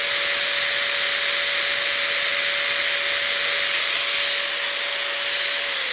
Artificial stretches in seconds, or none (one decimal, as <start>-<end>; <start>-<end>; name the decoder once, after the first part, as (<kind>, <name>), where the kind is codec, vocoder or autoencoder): none